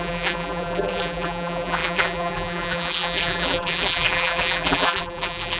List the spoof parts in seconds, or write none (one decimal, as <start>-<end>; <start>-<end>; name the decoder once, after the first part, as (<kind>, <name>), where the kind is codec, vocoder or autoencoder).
0.0-5.6 (vocoder, BigVGAN v2)